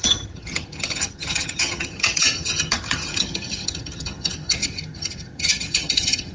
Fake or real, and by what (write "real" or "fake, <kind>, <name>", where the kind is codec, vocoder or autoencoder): fake, vocoder, HiFi-GAN